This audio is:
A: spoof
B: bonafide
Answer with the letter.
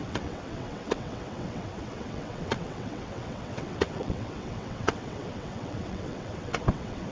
A